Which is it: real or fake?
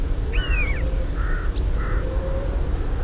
real